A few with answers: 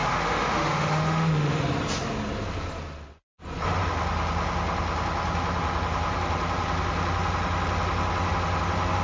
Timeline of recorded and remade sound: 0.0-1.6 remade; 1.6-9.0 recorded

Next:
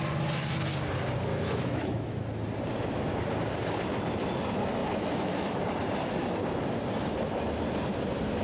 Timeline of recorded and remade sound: 0.0-1.3 recorded; 1.3-2.2 remade; 2.2-4.8 recorded; 4.8-5.6 remade; 5.6-8.4 recorded

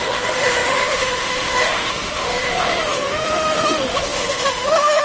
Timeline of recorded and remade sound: 0.0-5.0 remade

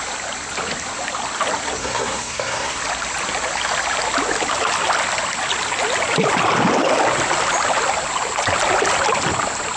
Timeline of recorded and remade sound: 0.0-1.8 recorded; 1.8-2.8 remade; 2.8-9.8 recorded